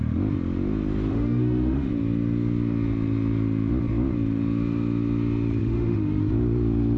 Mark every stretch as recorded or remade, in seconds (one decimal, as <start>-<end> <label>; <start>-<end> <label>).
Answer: 0.0-1.1 recorded; 1.1-1.9 remade; 1.9-5.6 recorded; 5.6-6.2 remade; 6.2-7.0 recorded